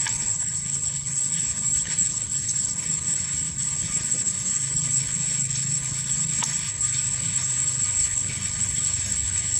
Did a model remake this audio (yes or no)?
yes